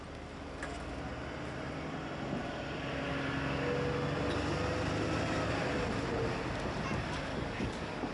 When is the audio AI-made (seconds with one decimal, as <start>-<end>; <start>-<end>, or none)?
7.3-8.1